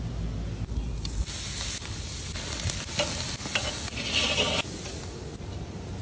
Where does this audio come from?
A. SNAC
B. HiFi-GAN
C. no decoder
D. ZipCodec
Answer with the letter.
C